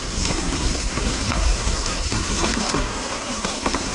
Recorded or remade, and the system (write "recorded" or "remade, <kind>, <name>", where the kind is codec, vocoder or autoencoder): remade, codec, SNAC